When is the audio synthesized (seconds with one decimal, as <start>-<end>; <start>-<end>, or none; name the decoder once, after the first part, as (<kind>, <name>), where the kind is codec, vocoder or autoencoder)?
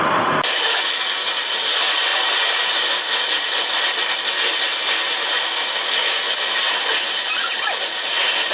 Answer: none